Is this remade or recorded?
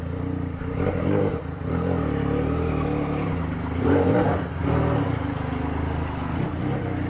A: recorded